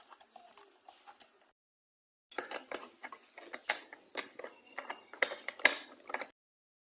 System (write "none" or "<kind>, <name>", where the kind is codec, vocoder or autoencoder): none